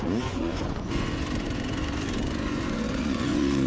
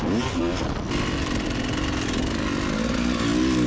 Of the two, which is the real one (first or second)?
second